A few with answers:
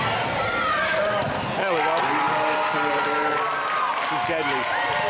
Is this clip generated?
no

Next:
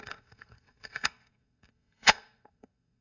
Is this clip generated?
yes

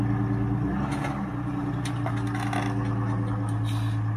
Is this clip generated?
no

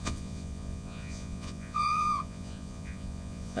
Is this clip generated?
yes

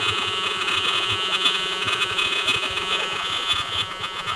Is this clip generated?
yes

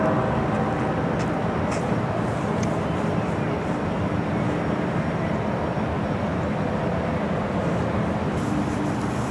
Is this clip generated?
no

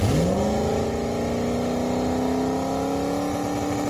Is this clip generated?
no